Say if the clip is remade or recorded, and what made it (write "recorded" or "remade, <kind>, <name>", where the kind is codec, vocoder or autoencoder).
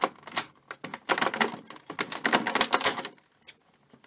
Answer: recorded